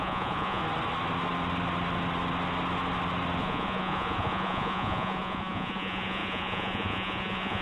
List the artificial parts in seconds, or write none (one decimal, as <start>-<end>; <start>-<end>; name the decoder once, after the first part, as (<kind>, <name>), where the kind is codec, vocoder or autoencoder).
0.0-0.6 (vocoder, Vocos); 3.4-7.6